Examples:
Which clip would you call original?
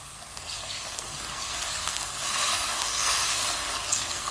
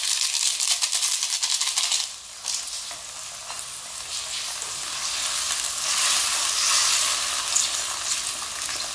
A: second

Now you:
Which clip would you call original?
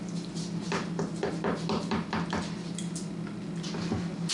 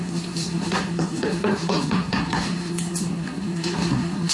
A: first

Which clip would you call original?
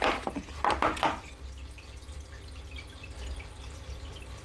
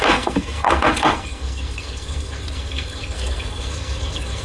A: first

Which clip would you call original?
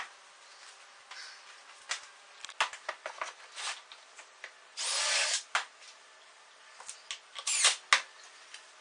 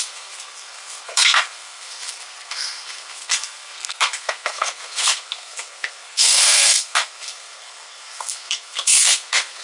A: first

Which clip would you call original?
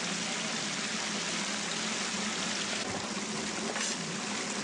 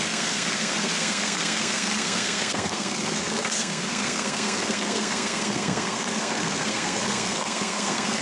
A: first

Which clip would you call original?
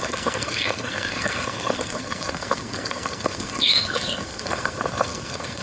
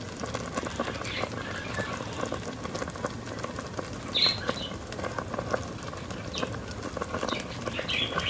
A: second